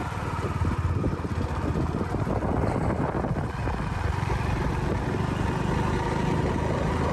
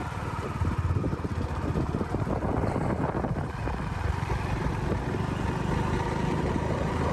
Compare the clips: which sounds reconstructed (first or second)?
second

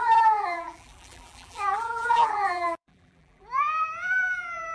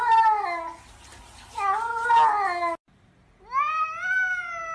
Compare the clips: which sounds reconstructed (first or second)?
first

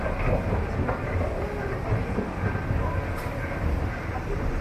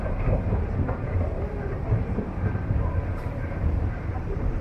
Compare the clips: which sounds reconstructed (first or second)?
second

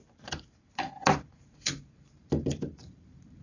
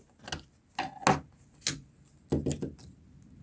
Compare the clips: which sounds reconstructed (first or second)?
first